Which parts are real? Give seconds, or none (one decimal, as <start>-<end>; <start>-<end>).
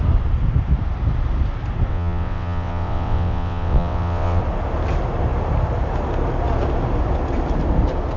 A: 0.0-1.9; 4.4-8.2